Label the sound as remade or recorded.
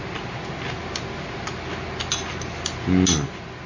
recorded